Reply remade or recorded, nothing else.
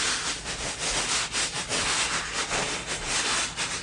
recorded